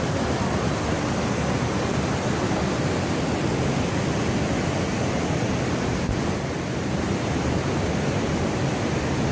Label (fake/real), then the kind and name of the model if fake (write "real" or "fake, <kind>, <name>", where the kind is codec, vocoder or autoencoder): real